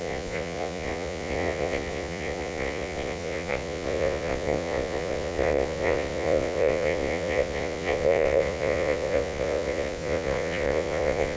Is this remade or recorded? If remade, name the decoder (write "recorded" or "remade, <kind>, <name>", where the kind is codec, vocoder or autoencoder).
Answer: remade, vocoder, Vocos